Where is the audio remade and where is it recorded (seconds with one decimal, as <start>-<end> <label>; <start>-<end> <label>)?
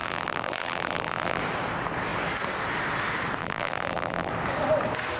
0.0-1.4 remade; 1.4-3.4 recorded; 3.4-4.3 remade; 4.3-5.2 recorded